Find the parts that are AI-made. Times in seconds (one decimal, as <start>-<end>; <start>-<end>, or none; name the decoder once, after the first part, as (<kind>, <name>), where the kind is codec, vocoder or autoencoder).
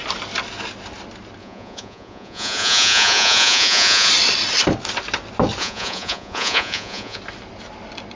1.4-4.1 (vocoder, Vocos); 5.6-7.2